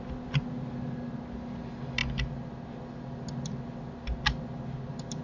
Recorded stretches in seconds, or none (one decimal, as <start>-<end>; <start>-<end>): 0.0-5.2